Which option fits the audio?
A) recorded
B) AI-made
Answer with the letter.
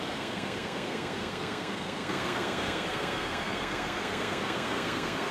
B